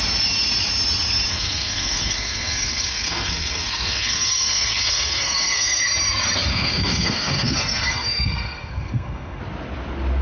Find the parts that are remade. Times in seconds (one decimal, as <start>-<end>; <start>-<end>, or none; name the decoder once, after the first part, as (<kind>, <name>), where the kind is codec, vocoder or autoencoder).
1.3-5.8 (codec, SNAC); 6.5-9.4

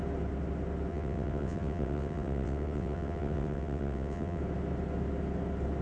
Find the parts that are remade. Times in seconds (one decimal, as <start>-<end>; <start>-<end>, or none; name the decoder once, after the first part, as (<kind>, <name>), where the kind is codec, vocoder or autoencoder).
0.9-4.4 (vocoder, WaveNeXt)

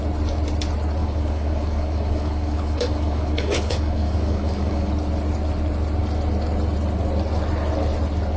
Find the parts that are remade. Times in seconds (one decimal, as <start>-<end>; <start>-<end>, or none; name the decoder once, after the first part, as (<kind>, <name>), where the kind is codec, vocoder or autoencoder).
1.0-4.9 (codec, DAC)

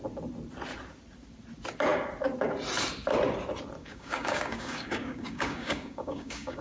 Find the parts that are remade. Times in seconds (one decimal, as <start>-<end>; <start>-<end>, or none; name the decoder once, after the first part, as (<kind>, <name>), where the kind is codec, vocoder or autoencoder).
3.8-6.6 (codec, DAC)